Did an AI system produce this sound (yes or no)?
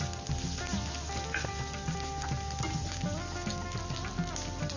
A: no